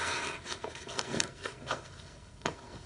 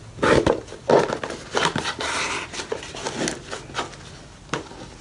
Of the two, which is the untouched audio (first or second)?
second